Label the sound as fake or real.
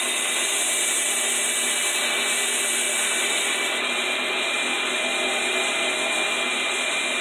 real